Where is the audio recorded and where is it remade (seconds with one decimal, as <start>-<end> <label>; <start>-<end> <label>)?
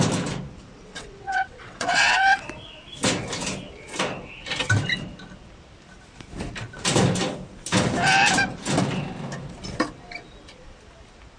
0.0-0.9 recorded; 0.9-2.4 remade; 2.4-11.4 recorded